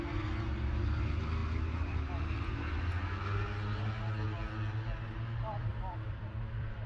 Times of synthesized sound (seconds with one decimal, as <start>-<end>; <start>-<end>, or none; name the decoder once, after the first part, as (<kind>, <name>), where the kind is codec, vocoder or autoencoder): 5.7-6.9 (vocoder, BigVGAN v2)